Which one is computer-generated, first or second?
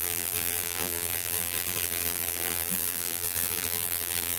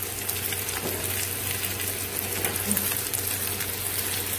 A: first